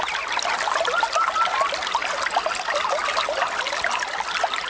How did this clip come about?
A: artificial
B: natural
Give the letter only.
B